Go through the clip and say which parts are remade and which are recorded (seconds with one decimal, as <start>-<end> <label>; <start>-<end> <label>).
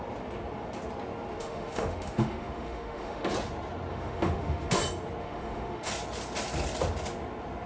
0.0-1.4 recorded; 1.4-3.3 remade; 3.3-3.9 recorded; 3.9-4.8 remade; 4.8-5.2 recorded; 5.2-5.9 remade; 5.9-7.7 recorded